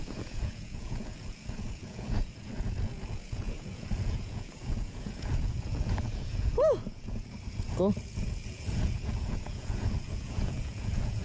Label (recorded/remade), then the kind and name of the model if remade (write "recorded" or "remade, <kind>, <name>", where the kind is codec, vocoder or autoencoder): remade, vocoder, Vocos